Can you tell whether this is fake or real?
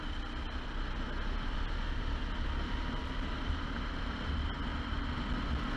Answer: real